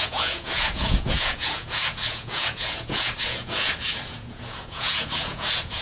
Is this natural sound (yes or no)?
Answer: no